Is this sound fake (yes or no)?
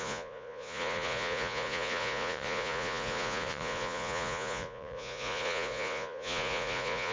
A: yes